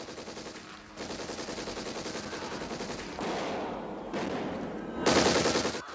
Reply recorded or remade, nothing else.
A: recorded